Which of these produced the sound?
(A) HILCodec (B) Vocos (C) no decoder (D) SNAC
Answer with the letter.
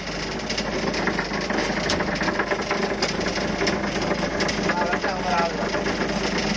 C